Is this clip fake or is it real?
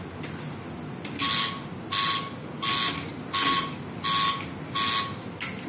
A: real